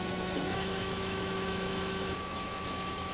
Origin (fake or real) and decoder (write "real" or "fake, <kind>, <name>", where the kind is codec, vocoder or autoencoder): fake, autoencoder, DAC-VAE